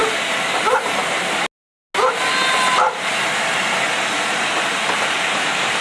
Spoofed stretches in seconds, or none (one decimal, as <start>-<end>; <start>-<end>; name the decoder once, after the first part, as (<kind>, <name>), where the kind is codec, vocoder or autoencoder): 0.6-1.0 (vocoder, BigVGAN v2); 4.3-5.8